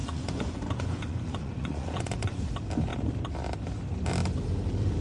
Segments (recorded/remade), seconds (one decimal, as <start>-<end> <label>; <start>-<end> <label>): 0.0-2.5 remade; 2.5-5.0 recorded

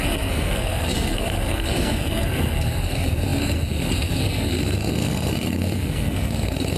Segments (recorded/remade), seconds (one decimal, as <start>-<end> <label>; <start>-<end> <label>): 0.0-6.8 remade

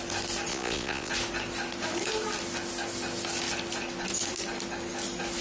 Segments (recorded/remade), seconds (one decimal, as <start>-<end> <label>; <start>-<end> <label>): 0.0-0.5 recorded; 0.5-1.1 remade; 1.1-5.4 recorded

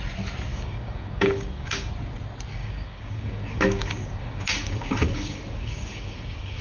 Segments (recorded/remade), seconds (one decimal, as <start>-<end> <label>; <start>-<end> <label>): 0.0-0.5 recorded; 0.5-1.9 remade; 1.9-2.5 recorded; 2.5-6.6 remade

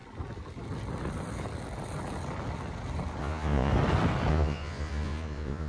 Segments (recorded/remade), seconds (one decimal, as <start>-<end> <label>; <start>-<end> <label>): 0.0-3.2 recorded; 3.2-3.7 remade; 3.7-4.3 recorded; 4.3-5.7 remade

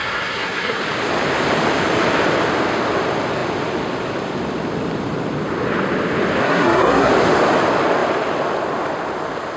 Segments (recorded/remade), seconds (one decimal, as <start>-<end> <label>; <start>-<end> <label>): 0.0-0.8 remade; 0.8-6.4 recorded; 6.4-7.1 remade; 7.1-9.6 recorded